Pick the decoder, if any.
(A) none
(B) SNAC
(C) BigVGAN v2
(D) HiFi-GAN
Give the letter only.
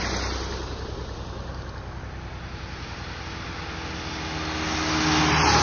A